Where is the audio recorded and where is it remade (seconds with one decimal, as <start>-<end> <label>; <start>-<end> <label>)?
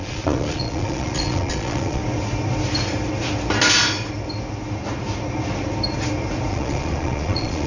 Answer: 0.0-2.0 remade; 2.0-6.5 recorded; 6.5-7.7 remade